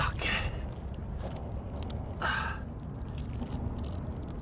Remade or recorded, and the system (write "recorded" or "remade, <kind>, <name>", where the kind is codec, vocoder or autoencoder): recorded